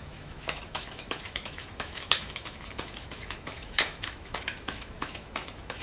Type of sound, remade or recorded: remade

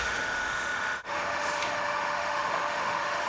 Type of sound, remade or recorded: remade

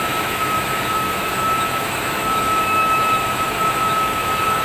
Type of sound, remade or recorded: remade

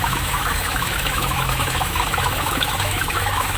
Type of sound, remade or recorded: remade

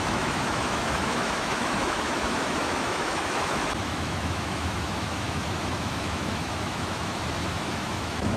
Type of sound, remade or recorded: remade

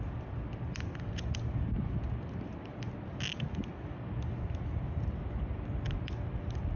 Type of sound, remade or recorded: recorded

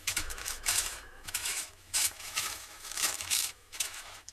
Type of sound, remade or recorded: remade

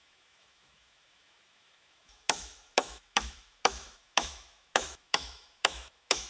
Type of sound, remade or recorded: remade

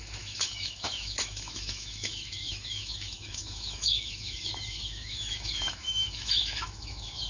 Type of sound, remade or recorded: remade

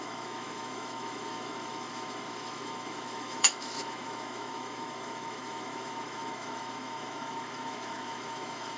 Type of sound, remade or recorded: remade